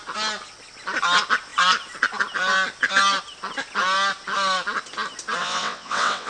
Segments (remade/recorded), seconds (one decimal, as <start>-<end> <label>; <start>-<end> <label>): 0.0-5.4 recorded; 5.4-6.3 remade